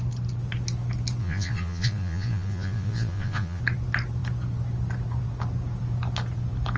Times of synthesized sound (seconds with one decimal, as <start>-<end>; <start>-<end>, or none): 1.2-3.6